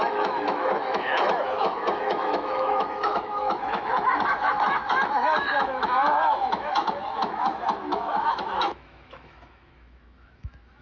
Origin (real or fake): fake